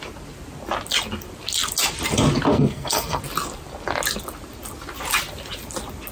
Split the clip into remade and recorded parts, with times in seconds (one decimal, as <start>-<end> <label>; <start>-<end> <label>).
0.0-2.5 recorded; 2.5-3.2 remade; 3.2-6.1 recorded